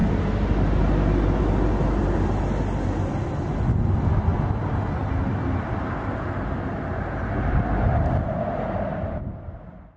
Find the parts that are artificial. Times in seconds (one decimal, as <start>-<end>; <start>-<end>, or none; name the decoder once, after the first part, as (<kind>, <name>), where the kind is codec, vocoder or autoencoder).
none